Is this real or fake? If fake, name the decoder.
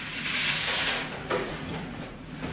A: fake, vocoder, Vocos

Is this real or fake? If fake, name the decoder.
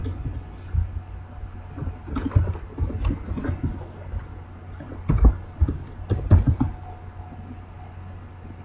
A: real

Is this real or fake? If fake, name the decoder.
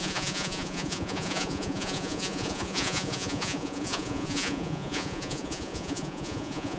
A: fake, vocoder, Vocos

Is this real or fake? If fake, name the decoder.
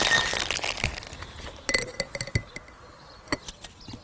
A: real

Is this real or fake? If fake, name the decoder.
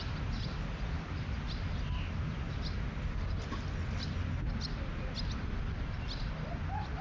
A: real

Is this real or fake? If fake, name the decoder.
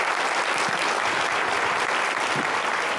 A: real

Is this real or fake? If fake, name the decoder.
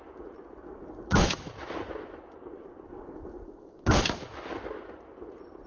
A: real